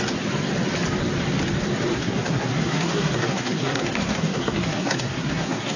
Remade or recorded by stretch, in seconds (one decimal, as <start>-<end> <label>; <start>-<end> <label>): 0.0-1.9 recorded; 1.9-5.8 remade